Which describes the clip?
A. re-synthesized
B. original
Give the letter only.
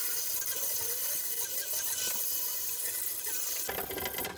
B